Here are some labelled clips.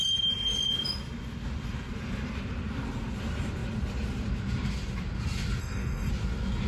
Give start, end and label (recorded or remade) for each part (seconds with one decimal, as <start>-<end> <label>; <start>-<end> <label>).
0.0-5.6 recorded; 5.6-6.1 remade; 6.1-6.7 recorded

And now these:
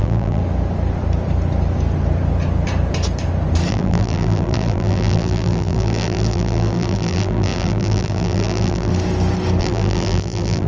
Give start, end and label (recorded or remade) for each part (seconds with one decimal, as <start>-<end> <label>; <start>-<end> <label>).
0.0-0.4 remade; 0.4-3.7 recorded; 3.7-8.9 remade; 8.9-9.6 recorded; 9.6-10.7 remade

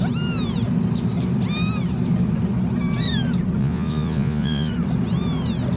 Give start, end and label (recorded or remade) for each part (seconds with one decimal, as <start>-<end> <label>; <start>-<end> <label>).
0.0-3.6 recorded; 3.6-4.7 remade; 4.7-5.8 recorded